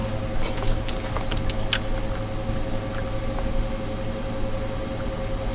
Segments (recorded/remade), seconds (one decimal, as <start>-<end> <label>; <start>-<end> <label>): 0.0-5.5 recorded